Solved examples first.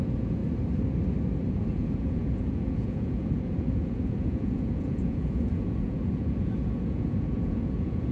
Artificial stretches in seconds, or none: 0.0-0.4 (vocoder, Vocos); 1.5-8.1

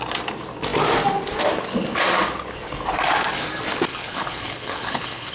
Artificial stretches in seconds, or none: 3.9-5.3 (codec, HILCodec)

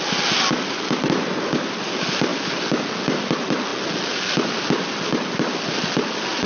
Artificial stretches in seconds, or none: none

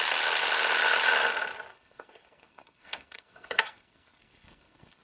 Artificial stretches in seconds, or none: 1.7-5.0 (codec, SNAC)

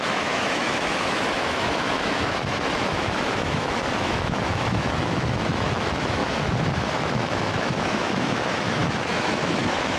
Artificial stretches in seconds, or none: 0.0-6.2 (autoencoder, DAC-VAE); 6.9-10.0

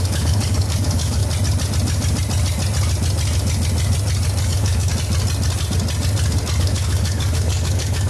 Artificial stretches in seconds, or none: 0.0-1.2 (codec, DAC); 4.4-4.9; 6.6-8.1